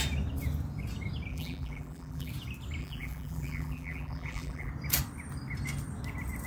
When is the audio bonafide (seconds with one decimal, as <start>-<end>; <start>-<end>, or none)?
0.0-1.3; 2.3-2.8; 4.7-6.5